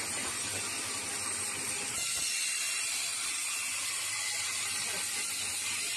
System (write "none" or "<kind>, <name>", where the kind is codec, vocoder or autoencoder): vocoder, BigVGAN v2